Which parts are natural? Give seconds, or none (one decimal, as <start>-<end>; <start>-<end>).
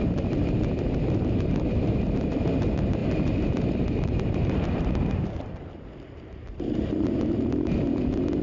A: none